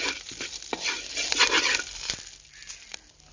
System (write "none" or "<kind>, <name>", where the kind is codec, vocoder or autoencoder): none